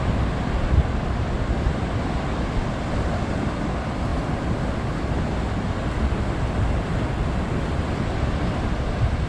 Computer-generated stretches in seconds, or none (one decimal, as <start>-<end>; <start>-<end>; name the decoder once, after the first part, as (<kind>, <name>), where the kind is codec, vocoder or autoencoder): 0.0-9.3 (vocoder, BigVGAN v2)